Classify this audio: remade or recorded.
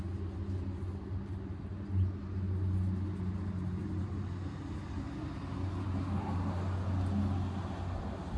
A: recorded